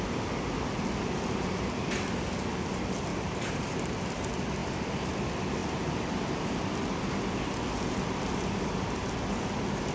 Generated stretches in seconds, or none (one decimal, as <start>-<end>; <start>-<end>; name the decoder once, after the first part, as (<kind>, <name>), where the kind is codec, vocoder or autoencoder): 3.1-3.8 (vocoder, BigVGAN v2); 4.6-5.1; 5.6-6.5